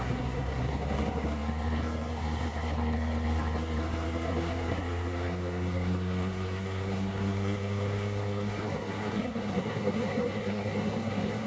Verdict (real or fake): fake